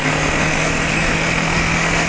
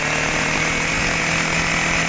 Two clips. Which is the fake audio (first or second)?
first